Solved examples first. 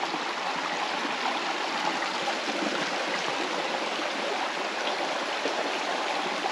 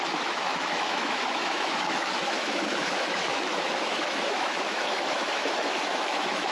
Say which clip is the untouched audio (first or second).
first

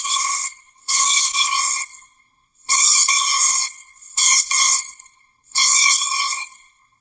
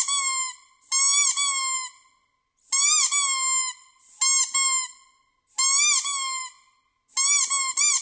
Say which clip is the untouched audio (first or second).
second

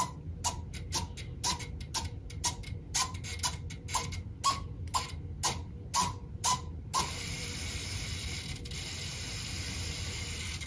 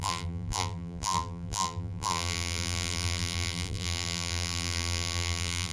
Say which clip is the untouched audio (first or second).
first